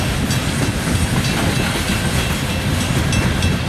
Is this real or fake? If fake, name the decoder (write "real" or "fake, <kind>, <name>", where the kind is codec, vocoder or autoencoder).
fake, vocoder, BigVGAN v2